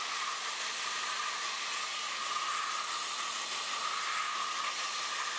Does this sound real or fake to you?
real